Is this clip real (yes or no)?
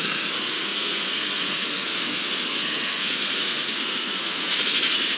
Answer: no